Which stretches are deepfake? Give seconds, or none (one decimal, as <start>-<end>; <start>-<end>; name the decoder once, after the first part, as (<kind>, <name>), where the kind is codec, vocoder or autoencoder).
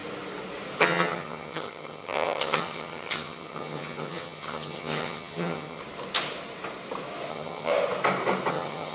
0.8-5.8 (vocoder, HiFi-GAN); 7.3-7.7; 8.5-8.9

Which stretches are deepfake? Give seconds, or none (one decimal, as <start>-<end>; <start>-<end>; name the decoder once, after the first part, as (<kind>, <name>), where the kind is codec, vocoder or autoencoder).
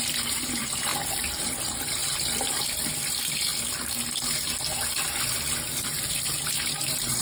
0.0-0.9 (vocoder, BigVGAN v2); 1.4-3.5; 6.1-7.2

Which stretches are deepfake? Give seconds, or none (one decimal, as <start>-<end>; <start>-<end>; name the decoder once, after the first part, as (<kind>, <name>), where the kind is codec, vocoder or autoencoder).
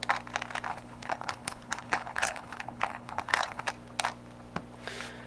0.7-3.7 (codec, HILCodec)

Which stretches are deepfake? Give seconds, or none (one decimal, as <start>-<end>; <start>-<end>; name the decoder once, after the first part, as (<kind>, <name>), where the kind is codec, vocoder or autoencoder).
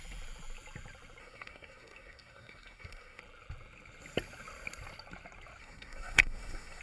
1.2-3.2 (codec, SNAC); 5.6-6.8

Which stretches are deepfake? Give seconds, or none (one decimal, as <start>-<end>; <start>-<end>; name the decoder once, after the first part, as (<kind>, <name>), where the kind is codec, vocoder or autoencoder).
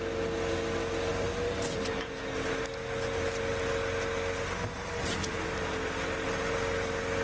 1.1-1.8 (vocoder, BigVGAN v2)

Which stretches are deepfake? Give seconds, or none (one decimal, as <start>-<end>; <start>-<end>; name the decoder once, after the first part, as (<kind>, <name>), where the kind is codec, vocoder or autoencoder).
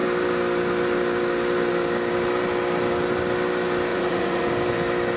3.9-4.5 (vocoder, Vocos)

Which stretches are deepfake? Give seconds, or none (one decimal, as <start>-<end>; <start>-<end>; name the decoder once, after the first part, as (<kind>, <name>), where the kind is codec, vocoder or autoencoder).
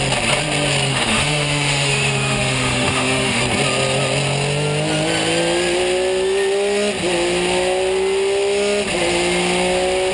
0.9-3.4 (autoencoder, DAC-VAE)